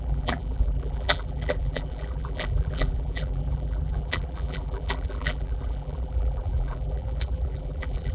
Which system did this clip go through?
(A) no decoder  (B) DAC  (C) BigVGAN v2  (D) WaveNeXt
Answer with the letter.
C